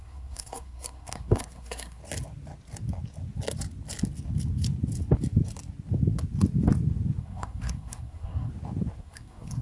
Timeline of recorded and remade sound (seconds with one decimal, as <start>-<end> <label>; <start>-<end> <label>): 0.0-2.0 remade; 2.0-7.2 recorded; 7.2-8.5 remade; 8.5-9.0 recorded; 9.0-9.6 remade